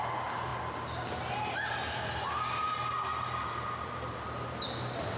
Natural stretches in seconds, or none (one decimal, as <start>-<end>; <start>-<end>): 0.0-3.1